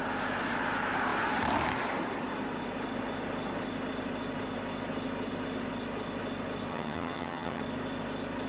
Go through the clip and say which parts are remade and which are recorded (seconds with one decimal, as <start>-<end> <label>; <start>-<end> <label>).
0.0-6.7 recorded; 6.7-7.6 remade; 7.6-8.5 recorded